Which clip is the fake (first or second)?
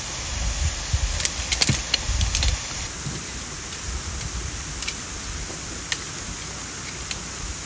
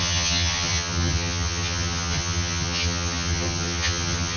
second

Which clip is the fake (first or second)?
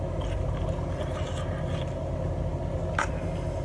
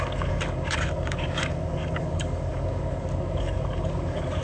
second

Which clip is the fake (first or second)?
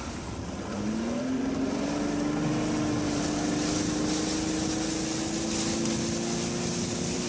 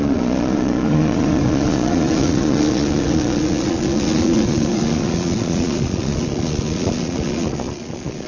second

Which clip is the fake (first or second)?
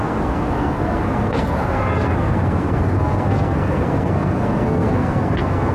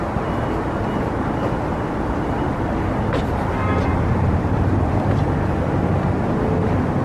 first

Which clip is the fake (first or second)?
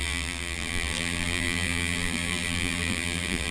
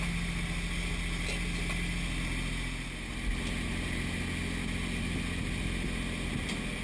first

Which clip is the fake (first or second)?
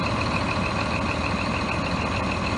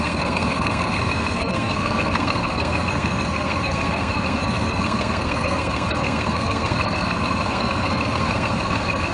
second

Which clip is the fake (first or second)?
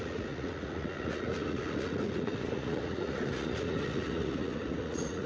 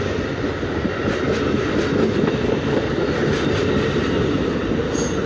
first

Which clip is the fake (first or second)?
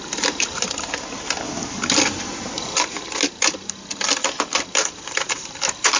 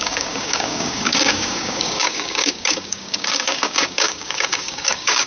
second